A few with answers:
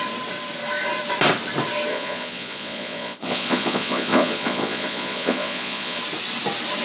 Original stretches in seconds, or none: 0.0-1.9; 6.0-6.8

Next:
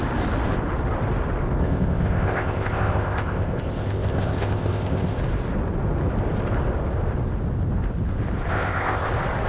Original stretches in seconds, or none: 0.0-1.6; 5.2-8.5; 9.1-9.5

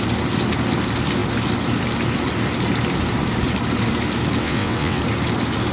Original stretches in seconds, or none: 0.0-4.4; 5.0-5.7

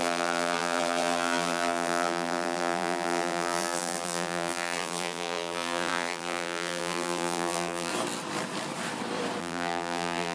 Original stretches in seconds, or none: 7.9-9.4